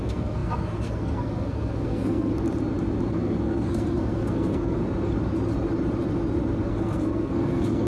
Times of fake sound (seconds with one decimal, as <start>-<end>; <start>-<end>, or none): 0.0-2.3; 3.1-4.8; 6.7-7.9

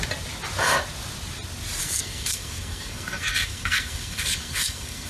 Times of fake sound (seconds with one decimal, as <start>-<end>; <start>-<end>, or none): 1.8-5.1